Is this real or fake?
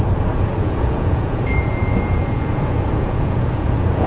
fake